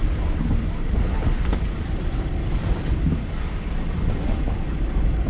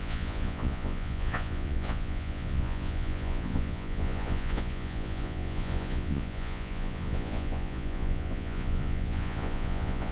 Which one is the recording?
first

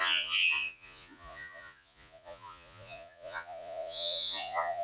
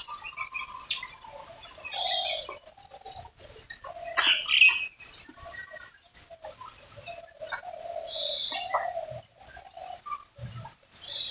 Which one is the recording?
second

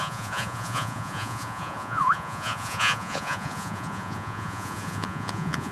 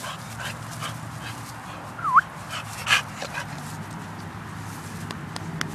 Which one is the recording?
second